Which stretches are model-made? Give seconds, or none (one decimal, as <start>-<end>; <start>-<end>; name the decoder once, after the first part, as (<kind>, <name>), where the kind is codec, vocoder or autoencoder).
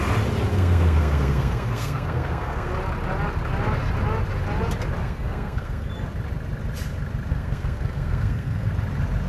0.5-2.7 (codec, SNAC); 5.0-5.9; 7.3-8.7